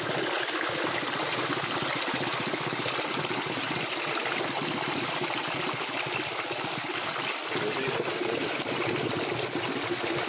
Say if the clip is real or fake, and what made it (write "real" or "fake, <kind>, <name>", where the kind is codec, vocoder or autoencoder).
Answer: real